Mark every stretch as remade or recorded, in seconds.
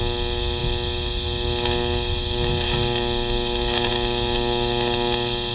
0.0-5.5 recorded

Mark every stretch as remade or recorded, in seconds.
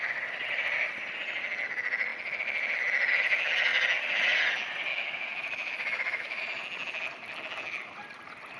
0.0-4.9 recorded; 4.9-6.4 remade; 6.4-8.6 recorded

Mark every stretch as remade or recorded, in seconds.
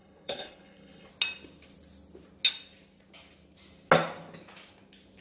0.0-1.1 remade; 1.1-5.2 recorded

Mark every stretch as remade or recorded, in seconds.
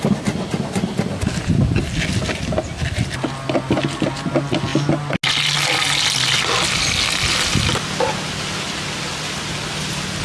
0.0-10.2 recorded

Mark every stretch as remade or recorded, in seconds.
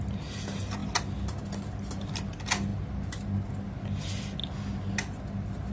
0.0-5.7 recorded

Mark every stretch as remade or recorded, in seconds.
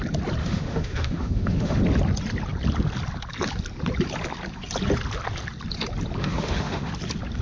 0.0-0.4 recorded; 0.4-1.8 remade; 1.8-6.2 recorded; 6.2-6.9 remade; 6.9-7.4 recorded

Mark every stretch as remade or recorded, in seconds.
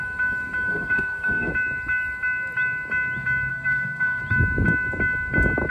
0.0-0.7 recorded; 0.7-1.5 remade; 1.5-3.5 recorded; 3.5-4.2 remade; 4.2-5.7 recorded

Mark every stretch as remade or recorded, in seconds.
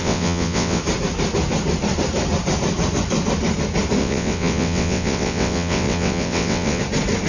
0.0-0.8 remade; 0.8-4.0 recorded; 4.0-6.8 remade; 6.8-7.3 recorded